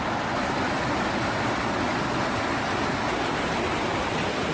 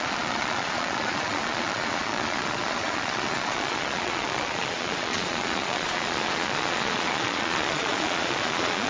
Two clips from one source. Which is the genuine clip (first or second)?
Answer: first